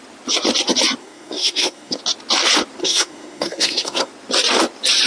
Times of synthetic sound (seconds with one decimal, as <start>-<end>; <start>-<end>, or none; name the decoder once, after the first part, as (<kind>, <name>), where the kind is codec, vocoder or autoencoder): 1.0-2.0 (codec, SNAC); 2.8-4.1